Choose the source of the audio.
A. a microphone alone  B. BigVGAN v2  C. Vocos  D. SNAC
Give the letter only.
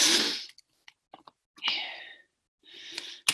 A